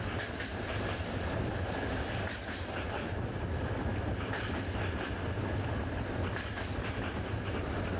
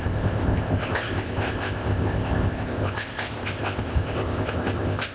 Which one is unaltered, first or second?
first